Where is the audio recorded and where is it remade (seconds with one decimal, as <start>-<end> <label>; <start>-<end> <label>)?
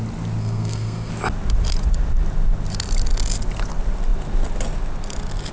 0.0-0.4 recorded; 0.4-1.1 remade; 1.1-5.5 recorded